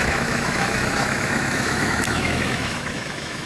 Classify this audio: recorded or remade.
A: remade